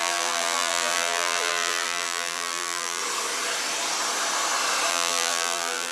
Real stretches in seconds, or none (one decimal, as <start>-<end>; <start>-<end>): 3.0-4.9